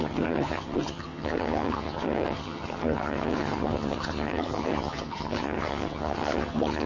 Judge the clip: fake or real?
fake